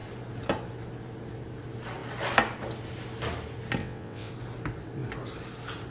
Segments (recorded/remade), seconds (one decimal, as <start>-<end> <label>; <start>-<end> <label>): 0.0-3.8 recorded; 3.8-4.3 remade; 4.3-5.9 recorded